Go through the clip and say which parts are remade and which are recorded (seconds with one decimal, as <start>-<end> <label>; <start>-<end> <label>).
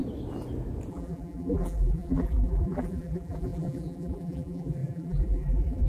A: 0.0-0.9 recorded; 0.9-5.9 remade